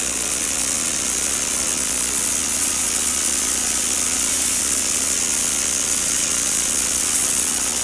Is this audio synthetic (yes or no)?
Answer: yes